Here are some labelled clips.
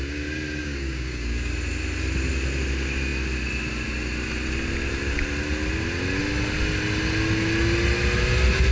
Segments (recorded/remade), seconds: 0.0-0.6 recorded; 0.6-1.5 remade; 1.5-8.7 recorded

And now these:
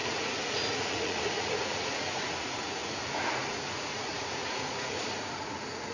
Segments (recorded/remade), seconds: 0.0-5.9 remade

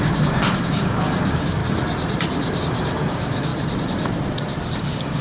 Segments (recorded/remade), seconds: 0.0-1.6 remade; 1.6-2.6 recorded; 2.6-3.5 remade; 3.5-4.8 recorded; 4.8-5.2 remade

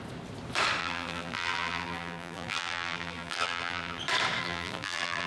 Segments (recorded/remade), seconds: 0.0-0.8 recorded; 0.8-4.0 remade; 4.0-4.4 recorded; 4.4-5.3 remade

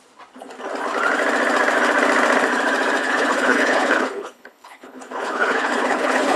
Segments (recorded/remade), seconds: 0.0-3.0 recorded; 3.0-6.4 remade

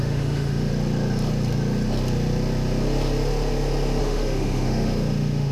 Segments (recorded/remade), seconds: 0.0-0.7 remade; 0.7-4.0 recorded; 4.0-5.5 remade

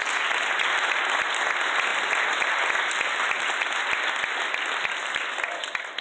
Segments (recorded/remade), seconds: 0.0-6.0 recorded

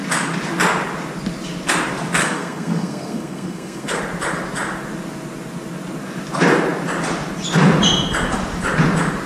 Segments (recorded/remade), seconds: 0.0-2.2 recorded; 2.2-4.0 remade; 4.0-9.3 recorded